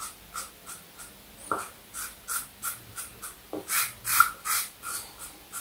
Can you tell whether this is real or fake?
fake